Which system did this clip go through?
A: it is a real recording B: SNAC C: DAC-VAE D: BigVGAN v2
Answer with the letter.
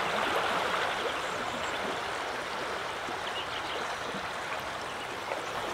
A